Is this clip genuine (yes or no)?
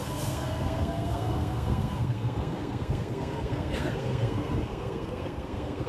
no